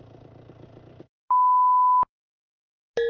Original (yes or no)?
yes